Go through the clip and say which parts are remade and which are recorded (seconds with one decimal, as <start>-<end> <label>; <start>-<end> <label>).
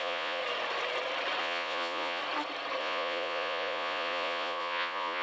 0.0-0.4 remade; 0.4-1.4 recorded; 1.4-2.2 remade; 2.2-2.8 recorded; 2.8-5.2 remade